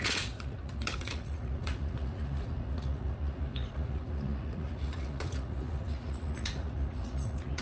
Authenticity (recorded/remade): remade